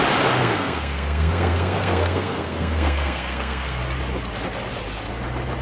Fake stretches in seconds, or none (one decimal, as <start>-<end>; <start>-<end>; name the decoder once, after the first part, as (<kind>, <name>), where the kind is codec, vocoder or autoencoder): 0.4-3.8 (codec, SNAC)